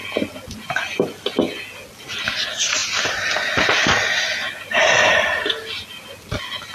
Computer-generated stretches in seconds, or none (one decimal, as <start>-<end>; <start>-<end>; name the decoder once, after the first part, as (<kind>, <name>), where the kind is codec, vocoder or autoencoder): none